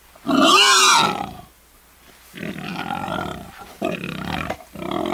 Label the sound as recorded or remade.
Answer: recorded